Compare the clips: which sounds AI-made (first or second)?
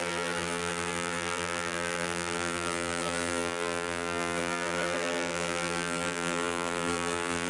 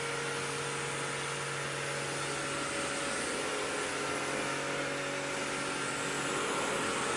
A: first